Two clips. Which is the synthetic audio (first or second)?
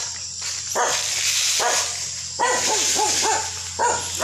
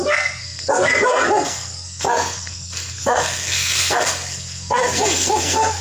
second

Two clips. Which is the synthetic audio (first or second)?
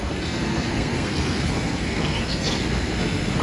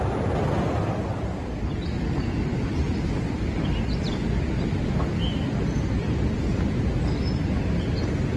first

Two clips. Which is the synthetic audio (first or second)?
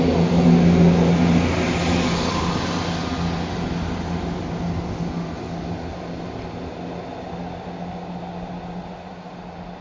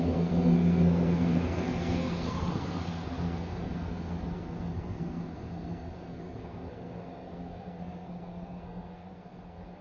second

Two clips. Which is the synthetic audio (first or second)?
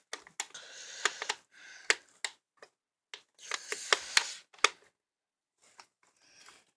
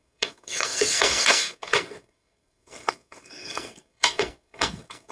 second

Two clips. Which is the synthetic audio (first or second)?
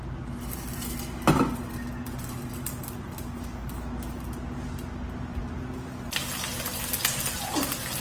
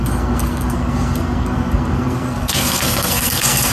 second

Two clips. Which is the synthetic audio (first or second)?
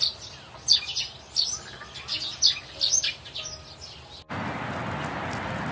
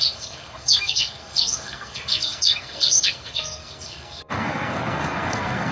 second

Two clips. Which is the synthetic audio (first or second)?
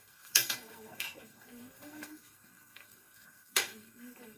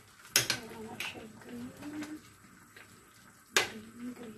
first